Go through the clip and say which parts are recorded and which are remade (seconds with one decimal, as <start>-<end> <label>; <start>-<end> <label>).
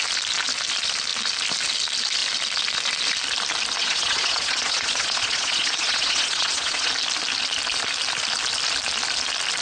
0.0-3.8 recorded; 3.8-6.9 remade; 6.9-9.6 recorded